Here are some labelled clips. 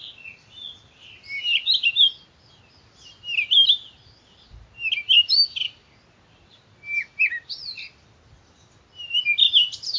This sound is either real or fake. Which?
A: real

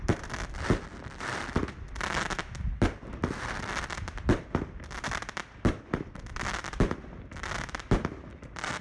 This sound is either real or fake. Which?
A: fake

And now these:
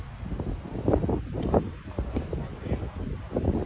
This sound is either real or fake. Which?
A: fake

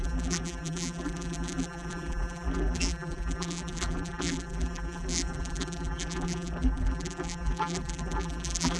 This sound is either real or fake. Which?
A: fake